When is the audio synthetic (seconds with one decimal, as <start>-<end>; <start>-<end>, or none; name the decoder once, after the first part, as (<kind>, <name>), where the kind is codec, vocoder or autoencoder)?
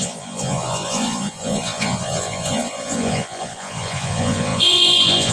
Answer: 0.0-5.3 (vocoder, Vocos)